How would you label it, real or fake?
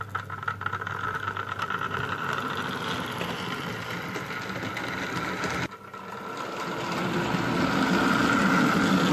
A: real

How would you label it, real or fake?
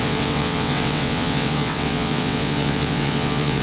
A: fake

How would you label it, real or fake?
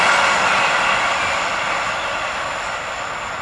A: real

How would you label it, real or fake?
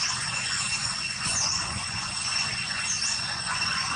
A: fake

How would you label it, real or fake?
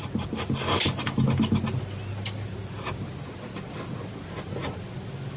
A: real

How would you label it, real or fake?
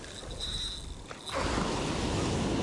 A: real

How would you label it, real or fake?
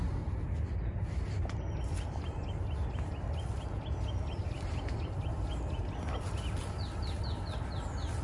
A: real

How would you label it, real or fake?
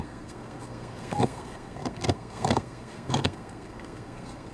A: fake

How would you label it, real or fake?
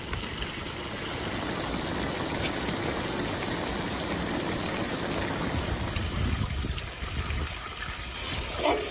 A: real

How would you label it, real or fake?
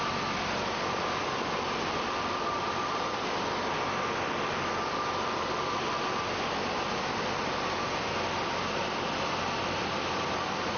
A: real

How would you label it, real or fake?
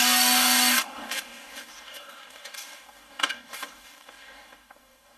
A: fake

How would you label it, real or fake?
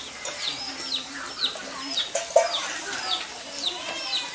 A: real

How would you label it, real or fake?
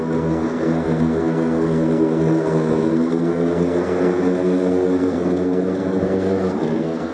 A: fake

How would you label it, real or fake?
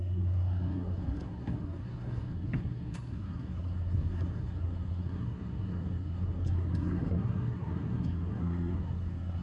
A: fake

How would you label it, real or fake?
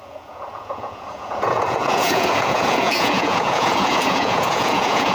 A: fake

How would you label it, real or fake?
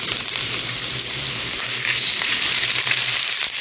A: fake